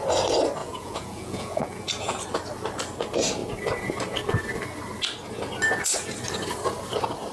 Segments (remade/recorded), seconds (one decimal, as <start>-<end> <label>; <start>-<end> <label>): 0.0-0.6 recorded; 0.6-2.2 remade; 2.2-7.3 recorded